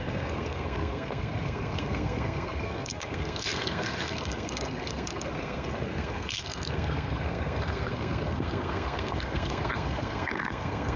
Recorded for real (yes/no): no